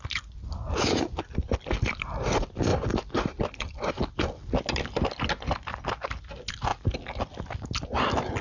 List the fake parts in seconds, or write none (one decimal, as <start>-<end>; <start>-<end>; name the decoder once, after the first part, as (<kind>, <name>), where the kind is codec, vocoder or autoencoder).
none